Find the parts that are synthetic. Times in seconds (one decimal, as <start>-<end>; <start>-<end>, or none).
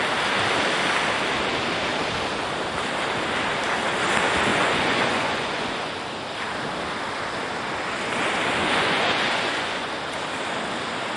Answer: 4.5-5.9; 8.6-9.9